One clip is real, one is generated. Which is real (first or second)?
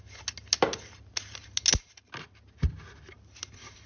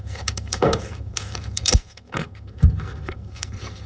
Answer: first